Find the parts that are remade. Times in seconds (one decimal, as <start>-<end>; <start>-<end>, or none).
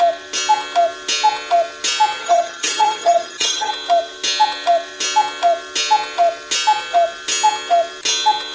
2.2-3.7